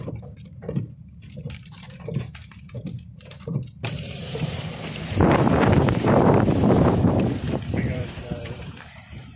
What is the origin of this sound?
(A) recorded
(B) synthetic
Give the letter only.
B